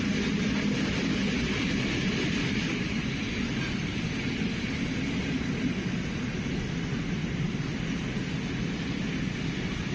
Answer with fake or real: real